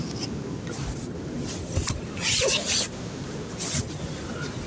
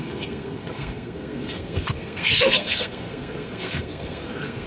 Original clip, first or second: first